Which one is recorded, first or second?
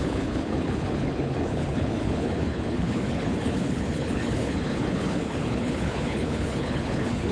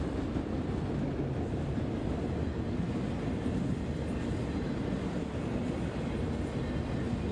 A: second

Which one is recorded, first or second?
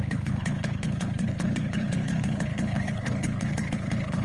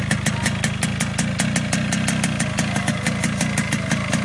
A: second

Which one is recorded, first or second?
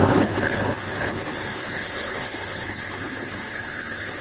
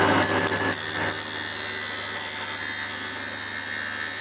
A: second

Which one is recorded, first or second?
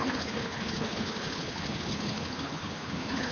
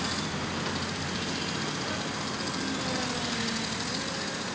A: second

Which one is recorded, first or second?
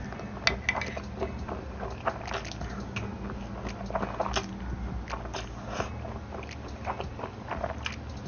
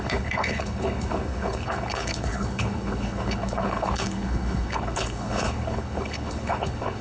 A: first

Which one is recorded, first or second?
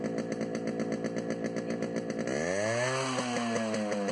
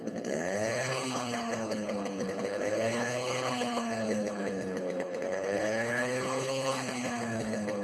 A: first